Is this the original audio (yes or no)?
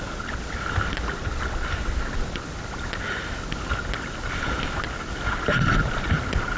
yes